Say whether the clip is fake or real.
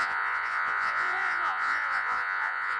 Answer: fake